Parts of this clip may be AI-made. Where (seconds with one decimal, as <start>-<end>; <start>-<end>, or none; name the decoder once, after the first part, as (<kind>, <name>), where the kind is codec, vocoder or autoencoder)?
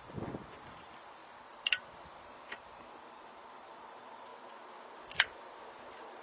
0.0-1.2 (vocoder, BigVGAN v2); 2.1-4.3; 5.0-6.2